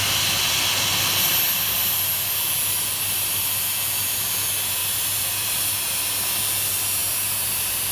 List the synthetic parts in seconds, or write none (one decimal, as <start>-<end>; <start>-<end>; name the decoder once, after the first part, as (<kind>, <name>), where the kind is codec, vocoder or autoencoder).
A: 4.8-5.7 (vocoder, BigVGAN v2)